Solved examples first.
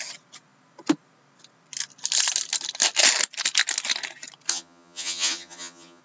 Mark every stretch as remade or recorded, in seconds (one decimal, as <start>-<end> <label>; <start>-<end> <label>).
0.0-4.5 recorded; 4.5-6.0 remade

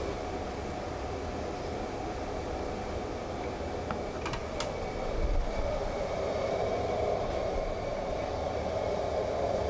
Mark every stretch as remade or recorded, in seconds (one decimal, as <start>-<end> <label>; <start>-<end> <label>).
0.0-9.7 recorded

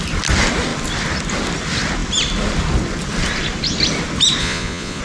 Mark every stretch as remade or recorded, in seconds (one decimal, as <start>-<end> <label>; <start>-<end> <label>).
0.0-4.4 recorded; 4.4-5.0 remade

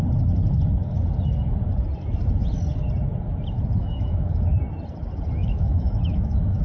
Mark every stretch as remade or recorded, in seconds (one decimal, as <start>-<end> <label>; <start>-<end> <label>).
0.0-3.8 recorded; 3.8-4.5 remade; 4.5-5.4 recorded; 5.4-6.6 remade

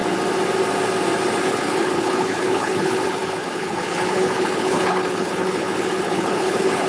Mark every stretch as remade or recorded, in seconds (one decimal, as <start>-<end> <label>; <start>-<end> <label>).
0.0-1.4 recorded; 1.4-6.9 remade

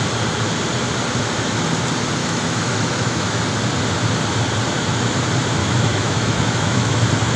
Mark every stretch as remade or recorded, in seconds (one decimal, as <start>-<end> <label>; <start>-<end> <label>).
0.0-2.2 recorded; 2.2-3.4 remade; 3.4-5.6 recorded; 5.6-7.0 remade; 7.0-7.4 recorded